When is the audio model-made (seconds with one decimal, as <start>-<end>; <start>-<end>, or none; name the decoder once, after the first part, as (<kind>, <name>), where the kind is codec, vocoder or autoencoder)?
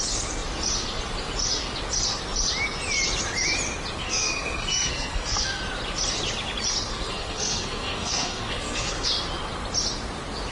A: 4.0-5.6 (codec, SNAC); 6.9-9.1